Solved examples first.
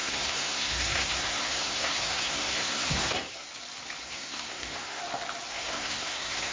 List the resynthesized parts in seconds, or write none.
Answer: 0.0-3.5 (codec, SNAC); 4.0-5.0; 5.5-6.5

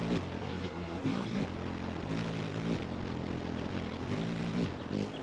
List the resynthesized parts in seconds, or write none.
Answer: 0.4-1.4 (codec, SNAC)

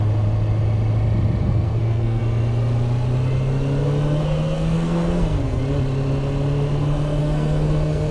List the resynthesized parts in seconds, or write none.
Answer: 1.4-2.2 (codec, SNAC); 4.2-5.6; 7.2-8.1

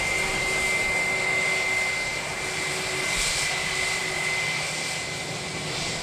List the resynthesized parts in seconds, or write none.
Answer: none